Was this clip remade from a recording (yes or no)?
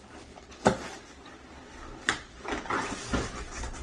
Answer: no